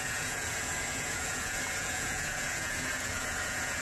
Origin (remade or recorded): remade